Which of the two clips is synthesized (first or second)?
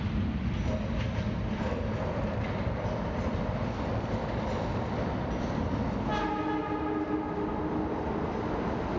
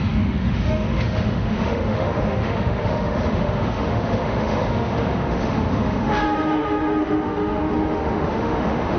second